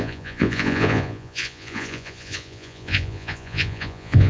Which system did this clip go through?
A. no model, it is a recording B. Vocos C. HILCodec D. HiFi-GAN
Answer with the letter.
B